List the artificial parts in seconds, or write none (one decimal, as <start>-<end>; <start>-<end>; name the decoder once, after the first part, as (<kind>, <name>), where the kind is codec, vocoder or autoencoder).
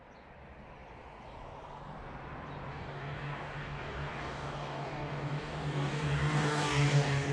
2.7-7.3 (codec, DAC)